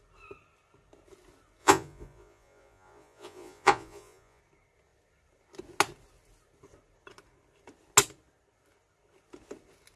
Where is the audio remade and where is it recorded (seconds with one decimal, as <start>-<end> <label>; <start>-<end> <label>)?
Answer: 0.0-1.6 recorded; 1.6-4.4 remade; 4.4-10.0 recorded